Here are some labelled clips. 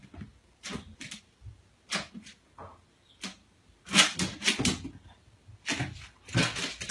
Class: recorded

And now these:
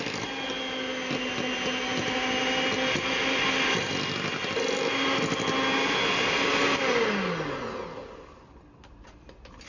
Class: recorded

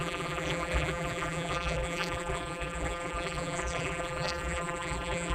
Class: remade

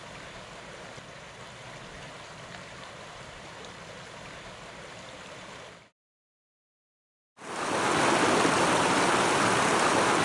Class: recorded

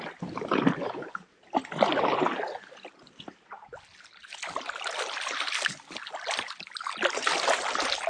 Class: recorded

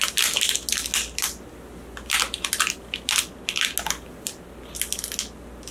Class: recorded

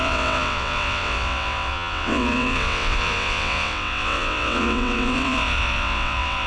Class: remade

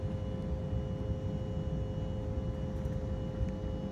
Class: recorded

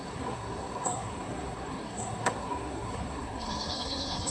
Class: remade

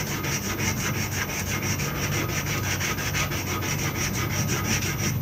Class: recorded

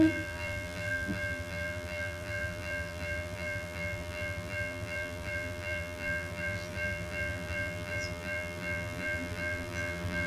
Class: remade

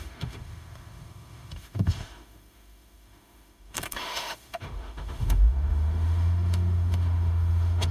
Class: remade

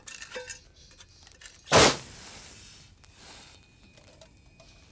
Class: recorded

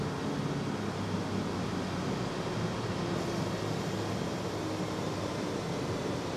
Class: recorded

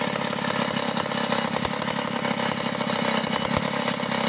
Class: recorded